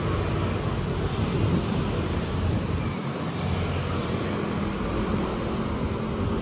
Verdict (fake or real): real